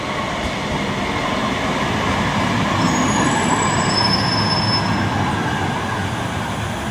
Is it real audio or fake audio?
real